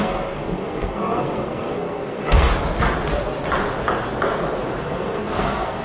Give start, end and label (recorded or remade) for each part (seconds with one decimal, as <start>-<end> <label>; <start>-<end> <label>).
0.0-2.5 remade; 2.5-4.8 recorded; 4.8-5.8 remade